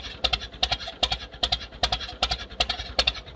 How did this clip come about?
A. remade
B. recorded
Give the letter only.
B